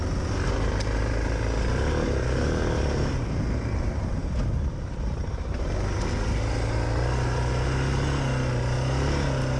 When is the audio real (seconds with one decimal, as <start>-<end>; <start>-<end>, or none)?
0.0-9.6